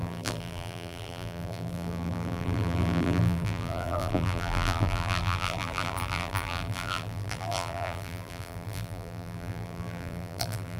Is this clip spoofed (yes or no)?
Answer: yes